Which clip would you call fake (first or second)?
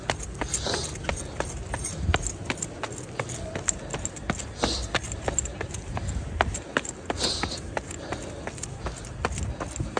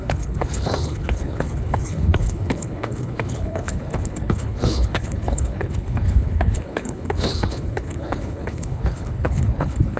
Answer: second